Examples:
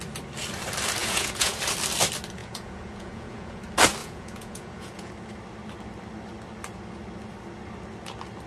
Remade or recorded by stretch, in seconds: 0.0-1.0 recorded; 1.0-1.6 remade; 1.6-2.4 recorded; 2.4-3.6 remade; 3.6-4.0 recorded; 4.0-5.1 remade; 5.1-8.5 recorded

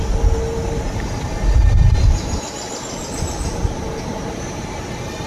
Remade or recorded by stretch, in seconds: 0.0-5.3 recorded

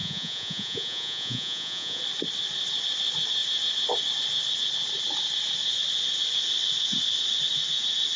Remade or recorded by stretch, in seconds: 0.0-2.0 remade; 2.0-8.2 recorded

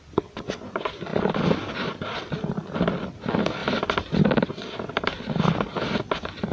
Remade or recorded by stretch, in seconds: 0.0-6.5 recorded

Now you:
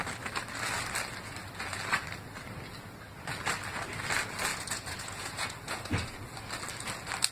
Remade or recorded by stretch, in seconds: 0.0-4.5 recorded; 4.5-6.2 remade; 6.2-7.3 recorded

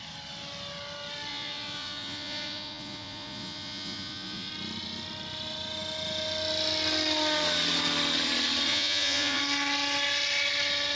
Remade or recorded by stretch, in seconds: 0.0-1.3 recorded; 1.3-4.5 remade; 4.5-8.7 recorded; 8.7-9.4 remade; 9.4-11.0 recorded

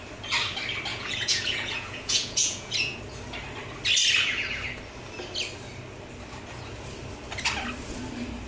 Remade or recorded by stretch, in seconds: 0.0-0.9 recorded; 0.9-3.0 remade; 3.0-8.5 recorded